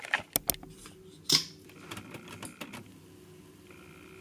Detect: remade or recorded recorded